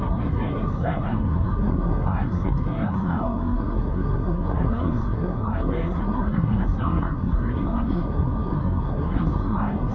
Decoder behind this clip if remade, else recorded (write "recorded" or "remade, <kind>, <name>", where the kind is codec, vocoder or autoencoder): remade, codec, SNAC